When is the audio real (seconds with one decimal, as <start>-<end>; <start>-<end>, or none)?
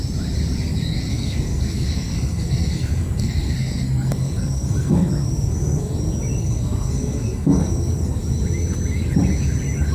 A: 0.0-1.1; 5.9-6.4; 8.2-9.9